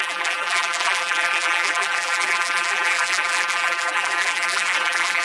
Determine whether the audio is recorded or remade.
remade